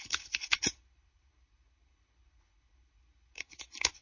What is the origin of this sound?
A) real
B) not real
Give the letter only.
B